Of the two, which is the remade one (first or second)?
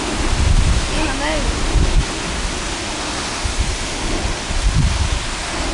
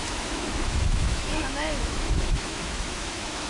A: second